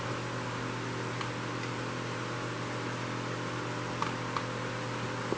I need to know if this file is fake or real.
real